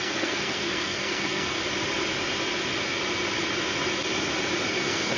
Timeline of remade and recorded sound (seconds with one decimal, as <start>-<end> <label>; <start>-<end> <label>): 0.0-1.6 remade; 1.6-4.7 recorded; 4.7-5.2 remade